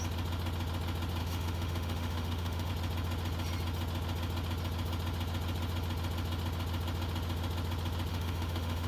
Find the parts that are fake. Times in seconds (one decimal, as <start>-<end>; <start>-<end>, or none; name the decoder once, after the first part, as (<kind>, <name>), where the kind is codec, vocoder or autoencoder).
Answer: 1.2-2.7 (autoencoder, DAC-VAE); 8.1-8.9